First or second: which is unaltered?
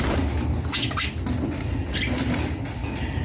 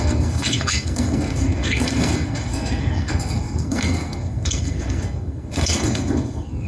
first